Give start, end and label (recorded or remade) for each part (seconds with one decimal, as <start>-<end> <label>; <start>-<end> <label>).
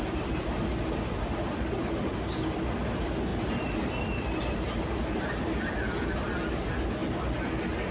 0.0-7.9 recorded